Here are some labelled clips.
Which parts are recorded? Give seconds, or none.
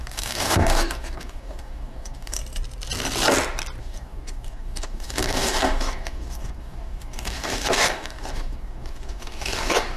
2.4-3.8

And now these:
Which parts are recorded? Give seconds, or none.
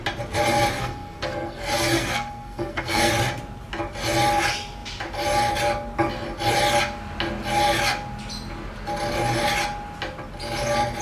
0.0-0.8; 3.1-11.0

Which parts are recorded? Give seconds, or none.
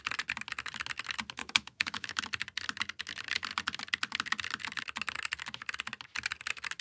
0.0-1.4; 2.2-6.8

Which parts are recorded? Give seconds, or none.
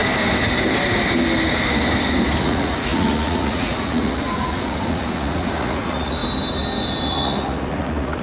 0.0-2.4; 6.2-7.1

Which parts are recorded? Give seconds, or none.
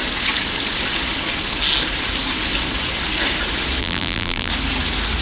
0.0-3.8; 4.5-5.2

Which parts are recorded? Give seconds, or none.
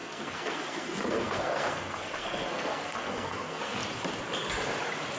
3.8-5.2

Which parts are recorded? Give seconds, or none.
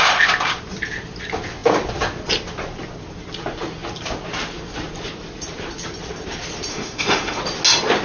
0.0-6.7; 7.4-8.0